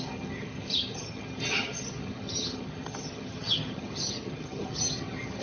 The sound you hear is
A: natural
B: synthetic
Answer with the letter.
B